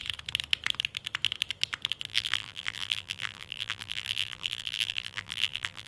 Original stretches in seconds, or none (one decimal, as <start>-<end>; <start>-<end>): 0.0-2.1